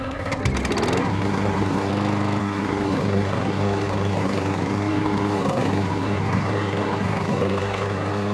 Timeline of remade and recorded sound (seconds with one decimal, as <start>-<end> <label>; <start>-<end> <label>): 0.0-0.4 remade; 0.4-1.0 recorded; 1.0-1.9 remade; 1.9-2.4 recorded; 2.4-8.3 remade

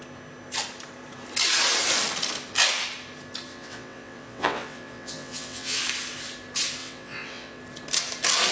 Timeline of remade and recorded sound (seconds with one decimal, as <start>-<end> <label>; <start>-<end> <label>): 0.0-3.5 recorded; 3.5-5.8 remade; 5.8-6.8 recorded; 6.8-7.6 remade; 7.6-8.5 recorded

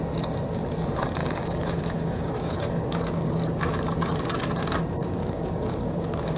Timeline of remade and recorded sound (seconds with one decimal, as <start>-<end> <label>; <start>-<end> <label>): 0.0-1.2 recorded; 1.2-3.6 remade; 3.6-5.0 recorded; 5.0-6.4 remade

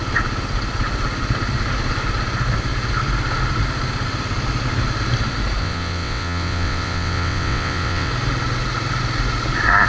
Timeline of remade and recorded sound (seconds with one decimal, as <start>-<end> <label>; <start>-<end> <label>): 0.0-5.6 recorded; 5.6-8.1 remade; 8.1-9.9 recorded

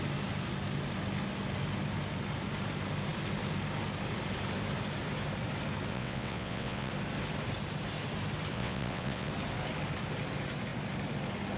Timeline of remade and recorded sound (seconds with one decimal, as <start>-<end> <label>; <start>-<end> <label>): 0.0-5.9 recorded; 5.9-6.9 remade; 6.9-8.5 recorded; 8.5-9.3 remade; 9.3-11.6 recorded

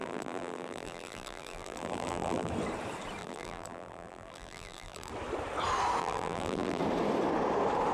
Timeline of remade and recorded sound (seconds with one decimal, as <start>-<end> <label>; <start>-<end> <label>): 0.0-2.5 remade; 2.5-3.2 recorded; 3.2-5.1 remade; 5.1-6.0 recorded; 6.0-6.8 remade; 6.8-7.9 recorded